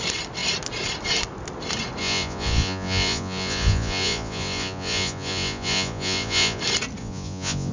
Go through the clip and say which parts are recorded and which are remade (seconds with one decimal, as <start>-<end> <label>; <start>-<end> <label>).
0.0-2.0 recorded; 2.0-6.6 remade; 6.6-7.0 recorded; 7.0-7.7 remade